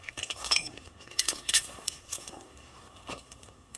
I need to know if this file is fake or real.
fake